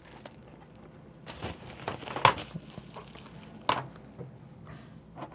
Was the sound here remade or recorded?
recorded